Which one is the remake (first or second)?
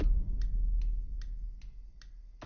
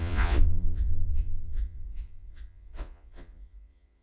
second